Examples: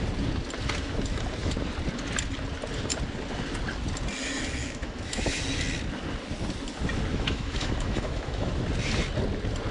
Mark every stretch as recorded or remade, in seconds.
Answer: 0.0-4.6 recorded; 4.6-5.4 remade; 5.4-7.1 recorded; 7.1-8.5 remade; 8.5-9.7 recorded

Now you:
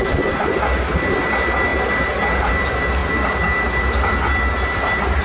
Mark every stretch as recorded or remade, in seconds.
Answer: 0.0-5.2 recorded

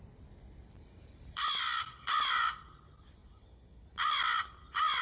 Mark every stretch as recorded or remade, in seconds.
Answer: 0.0-3.2 remade; 3.2-4.1 recorded; 4.1-5.0 remade

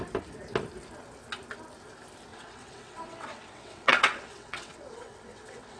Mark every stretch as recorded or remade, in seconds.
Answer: 0.0-2.3 recorded; 2.3-5.8 remade

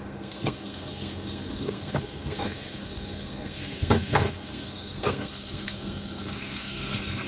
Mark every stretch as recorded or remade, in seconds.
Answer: 0.0-7.3 remade

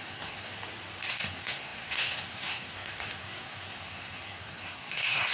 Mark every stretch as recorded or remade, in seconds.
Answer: 0.0-0.5 remade; 0.5-1.1 recorded; 1.1-5.3 remade

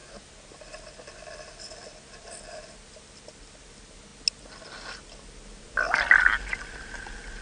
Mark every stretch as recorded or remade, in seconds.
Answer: 0.0-7.4 recorded

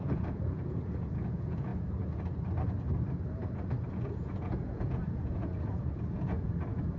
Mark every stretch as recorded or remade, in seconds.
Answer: 0.0-1.7 remade; 1.7-3.9 recorded; 3.9-7.0 remade